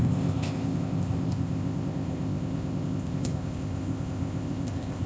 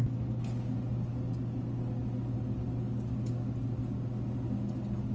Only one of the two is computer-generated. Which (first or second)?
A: first